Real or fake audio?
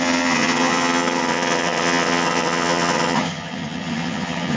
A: fake